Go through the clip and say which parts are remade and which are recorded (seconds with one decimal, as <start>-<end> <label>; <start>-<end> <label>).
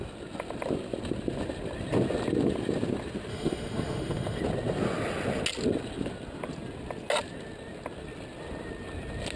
0.0-3.3 recorded; 3.3-4.4 remade; 4.4-9.4 recorded